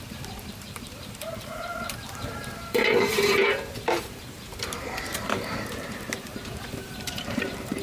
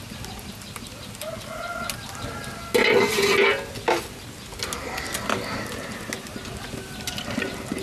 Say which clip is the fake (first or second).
first